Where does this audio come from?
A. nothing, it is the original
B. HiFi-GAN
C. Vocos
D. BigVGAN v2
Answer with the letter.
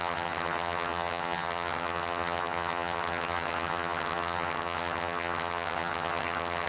B